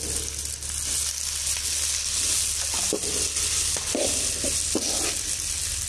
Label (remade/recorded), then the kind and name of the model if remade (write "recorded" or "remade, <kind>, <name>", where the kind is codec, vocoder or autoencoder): recorded